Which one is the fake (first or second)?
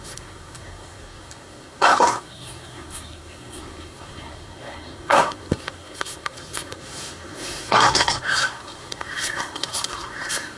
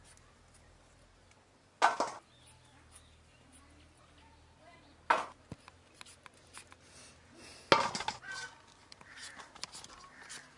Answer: first